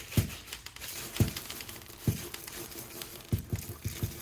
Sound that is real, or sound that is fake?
real